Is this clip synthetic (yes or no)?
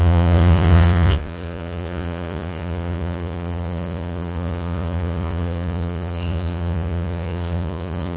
yes